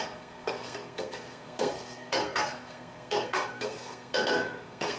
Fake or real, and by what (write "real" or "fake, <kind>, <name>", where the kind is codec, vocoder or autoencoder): fake, codec, SNAC